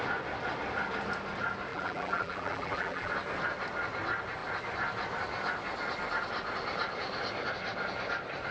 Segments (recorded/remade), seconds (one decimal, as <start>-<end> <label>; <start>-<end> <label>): 0.0-1.7 recorded; 1.7-3.1 remade; 3.1-8.5 recorded